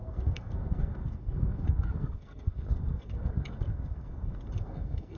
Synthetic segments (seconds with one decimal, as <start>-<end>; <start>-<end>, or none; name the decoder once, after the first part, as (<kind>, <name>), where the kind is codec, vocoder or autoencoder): 0.0-5.2 (codec, SNAC)